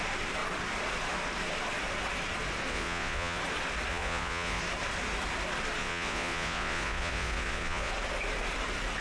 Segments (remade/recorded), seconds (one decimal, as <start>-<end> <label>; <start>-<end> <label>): 0.0-2.7 recorded; 2.7-3.4 remade; 3.4-3.9 recorded; 3.9-4.6 remade; 4.6-5.8 recorded; 5.8-7.9 remade; 7.9-9.0 recorded